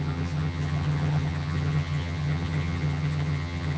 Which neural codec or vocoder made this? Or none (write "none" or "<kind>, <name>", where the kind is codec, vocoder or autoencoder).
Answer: vocoder, HiFi-GAN